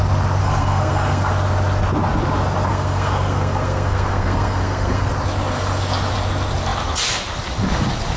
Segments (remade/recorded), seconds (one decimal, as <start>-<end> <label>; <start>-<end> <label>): 0.0-0.4 recorded; 0.4-1.3 remade; 1.3-2.7 recorded; 2.7-5.1 remade; 5.1-8.2 recorded